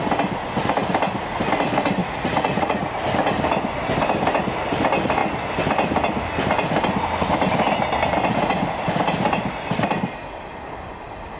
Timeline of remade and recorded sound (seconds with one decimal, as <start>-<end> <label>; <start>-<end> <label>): 0.0-2.0 recorded; 2.0-2.9 remade; 2.9-11.4 recorded